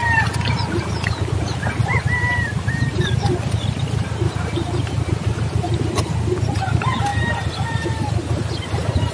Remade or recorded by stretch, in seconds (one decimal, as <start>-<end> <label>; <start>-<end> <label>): 0.0-9.1 recorded